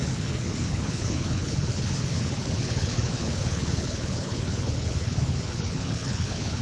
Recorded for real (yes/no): no